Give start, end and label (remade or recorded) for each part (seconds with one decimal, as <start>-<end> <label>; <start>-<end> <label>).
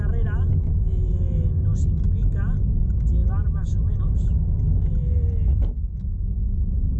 0.0-7.0 recorded